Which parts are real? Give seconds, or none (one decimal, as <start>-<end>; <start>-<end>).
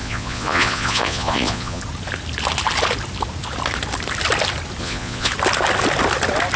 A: 1.8-4.8; 5.3-6.6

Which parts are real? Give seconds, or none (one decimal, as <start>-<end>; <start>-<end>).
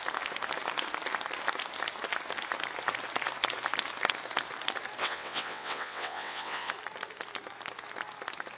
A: 0.0-5.0; 6.7-8.6